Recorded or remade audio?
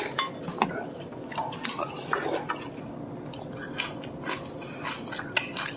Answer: recorded